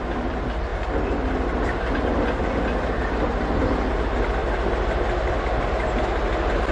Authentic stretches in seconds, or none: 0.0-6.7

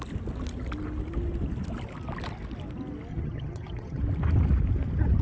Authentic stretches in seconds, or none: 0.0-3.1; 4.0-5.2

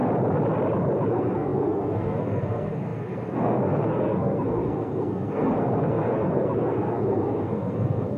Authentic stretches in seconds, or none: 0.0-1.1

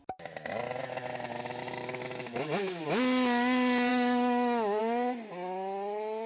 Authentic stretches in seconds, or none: 0.0-0.8; 2.8-3.9; 4.8-6.3